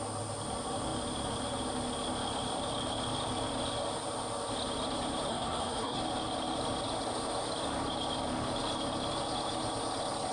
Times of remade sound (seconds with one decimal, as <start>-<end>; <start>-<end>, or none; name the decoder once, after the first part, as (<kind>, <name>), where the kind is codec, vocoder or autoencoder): 5.3-6.0 (codec, SNAC)